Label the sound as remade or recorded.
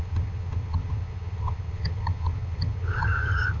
remade